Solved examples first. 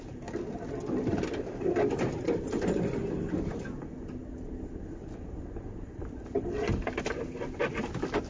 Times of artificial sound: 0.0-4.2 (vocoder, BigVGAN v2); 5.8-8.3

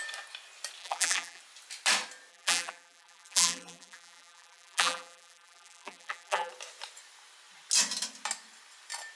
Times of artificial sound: 0.8-1.4 (vocoder, BigVGAN v2); 2.3-6.5

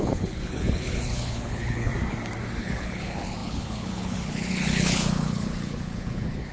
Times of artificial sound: 0.0-1.9 (codec, HILCodec); 2.6-6.5

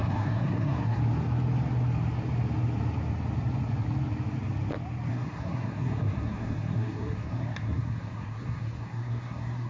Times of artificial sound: 0.0-1.0 (codec, SNAC); 5.1-9.7

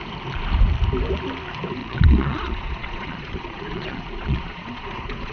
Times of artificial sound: 1.8-5.3 (vocoder, Vocos)

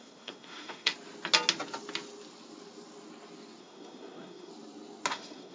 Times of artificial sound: 0.0-0.9 (codec, SNAC); 3.6-4.5; 5.1-5.5